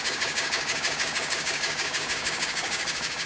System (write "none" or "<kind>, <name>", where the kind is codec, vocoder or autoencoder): codec, DAC